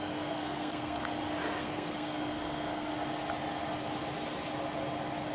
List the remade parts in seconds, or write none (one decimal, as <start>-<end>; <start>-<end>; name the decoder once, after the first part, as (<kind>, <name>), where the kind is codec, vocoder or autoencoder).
0.0-1.0 (codec, SNAC); 1.6-2.9